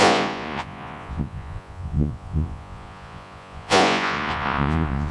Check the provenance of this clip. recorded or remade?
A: remade